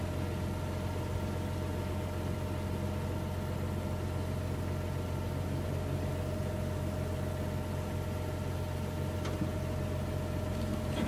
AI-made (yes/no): no